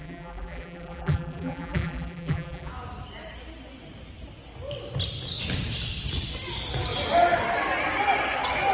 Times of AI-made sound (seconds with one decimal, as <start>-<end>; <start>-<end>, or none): 0.0-2.7